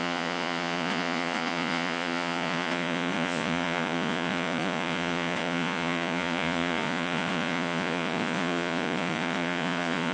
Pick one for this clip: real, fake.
fake